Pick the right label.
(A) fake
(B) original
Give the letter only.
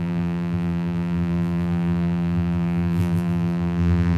A